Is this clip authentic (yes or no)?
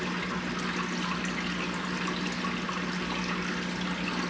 yes